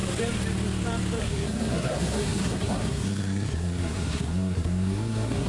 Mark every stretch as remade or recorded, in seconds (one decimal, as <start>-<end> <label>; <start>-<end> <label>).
0.0-1.2 recorded; 1.2-5.5 remade